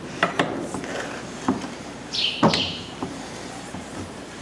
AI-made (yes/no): yes